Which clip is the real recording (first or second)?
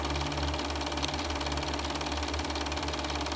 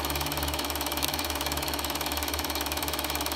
first